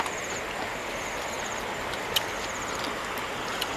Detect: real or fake real